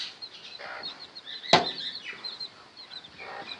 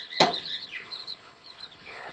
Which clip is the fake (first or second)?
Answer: second